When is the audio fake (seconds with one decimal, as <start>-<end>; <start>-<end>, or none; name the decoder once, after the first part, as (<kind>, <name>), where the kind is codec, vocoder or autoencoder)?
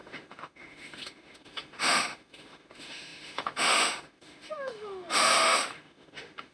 0.0-6.5 (autoencoder, DAC-VAE)